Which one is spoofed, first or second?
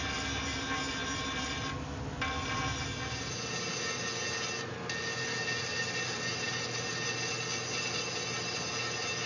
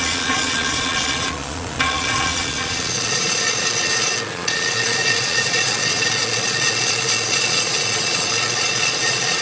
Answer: second